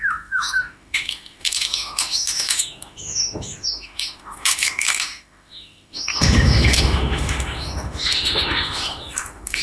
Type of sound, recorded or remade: remade